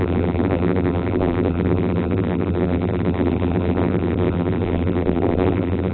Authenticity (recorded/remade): remade